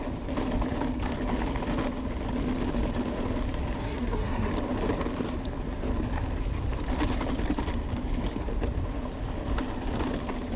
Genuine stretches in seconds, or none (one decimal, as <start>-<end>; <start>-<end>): 0.0-3.8; 4.5-10.6